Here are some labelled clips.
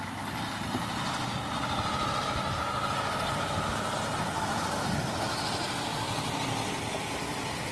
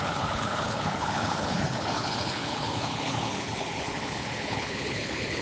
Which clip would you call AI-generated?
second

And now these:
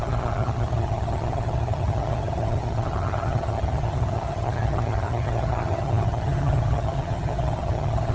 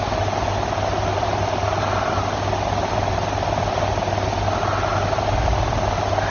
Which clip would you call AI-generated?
first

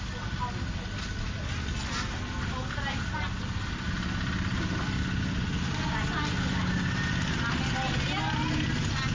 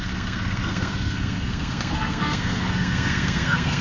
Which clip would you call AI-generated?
second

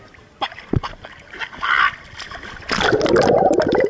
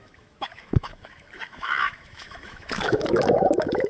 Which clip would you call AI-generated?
second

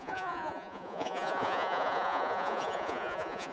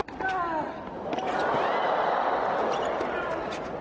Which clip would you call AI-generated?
first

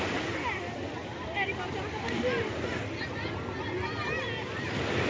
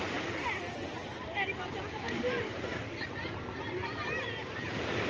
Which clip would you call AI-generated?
second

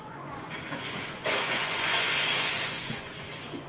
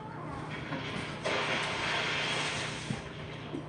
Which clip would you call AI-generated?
first